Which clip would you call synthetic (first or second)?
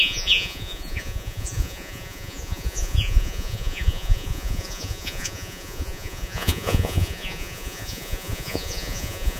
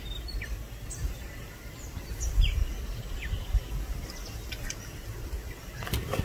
first